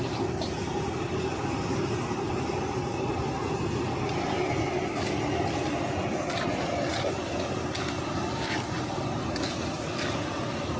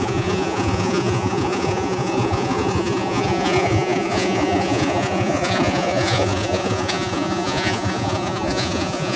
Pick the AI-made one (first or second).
second